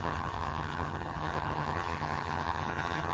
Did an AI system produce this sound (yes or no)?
yes